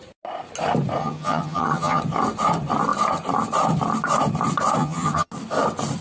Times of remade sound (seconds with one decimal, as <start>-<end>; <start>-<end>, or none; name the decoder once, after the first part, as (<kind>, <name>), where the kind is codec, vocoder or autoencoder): 1.0-2.0 (vocoder, HiFi-GAN); 4.8-5.3